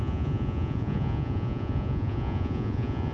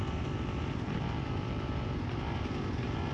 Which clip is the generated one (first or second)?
first